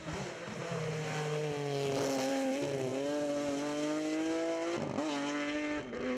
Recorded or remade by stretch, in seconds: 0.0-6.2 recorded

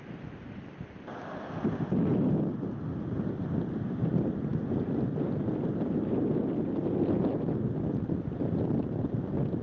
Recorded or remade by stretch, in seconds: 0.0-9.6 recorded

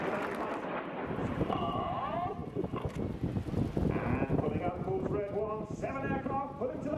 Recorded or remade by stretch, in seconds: 0.0-1.2 recorded; 1.2-2.0 remade; 2.0-7.0 recorded

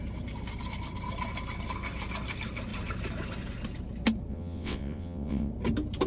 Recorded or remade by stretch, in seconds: 0.0-4.3 recorded; 4.3-5.5 remade; 5.5-6.1 recorded

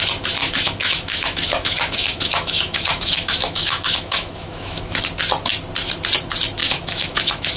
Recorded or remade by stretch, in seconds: 0.0-0.4 recorded; 0.4-5.0 remade; 5.0-6.6 recorded; 6.6-7.6 remade

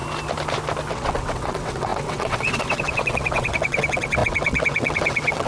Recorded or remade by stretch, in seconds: 0.0-0.9 recorded; 0.9-5.5 remade

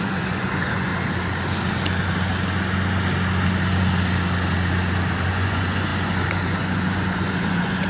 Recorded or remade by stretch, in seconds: 0.0-0.9 remade; 0.9-5.3 recorded; 5.3-7.9 remade

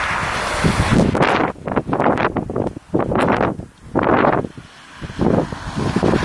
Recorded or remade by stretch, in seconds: 0.0-6.2 recorded